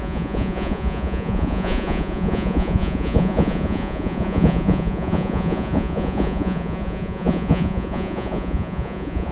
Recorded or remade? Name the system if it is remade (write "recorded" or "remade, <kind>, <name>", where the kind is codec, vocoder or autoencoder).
remade, vocoder, Vocos